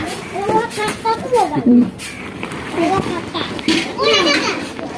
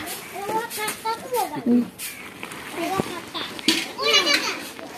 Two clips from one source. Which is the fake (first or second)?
first